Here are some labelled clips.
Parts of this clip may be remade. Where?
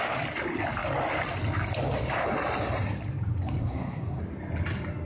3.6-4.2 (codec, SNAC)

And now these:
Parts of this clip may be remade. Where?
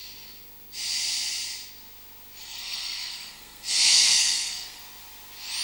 2.4-4.8 (codec, SNAC)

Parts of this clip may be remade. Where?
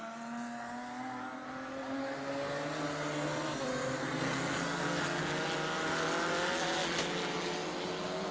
4.0-5.2 (codec, SNAC)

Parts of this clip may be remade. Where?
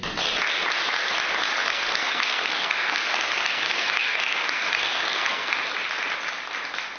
1.6-5.6 (codec, SNAC)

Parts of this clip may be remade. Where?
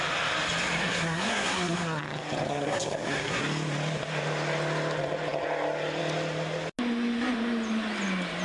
0.8-2.0 (codec, SNAC); 2.5-3.4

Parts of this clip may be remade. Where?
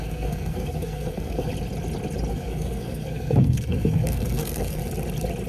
0.0-1.5 (codec, SNAC); 2.3-4.8